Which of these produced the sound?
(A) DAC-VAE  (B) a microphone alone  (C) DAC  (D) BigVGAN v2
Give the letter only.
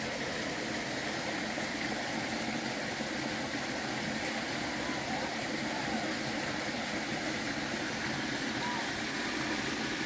B